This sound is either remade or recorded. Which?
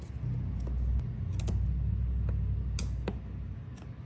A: recorded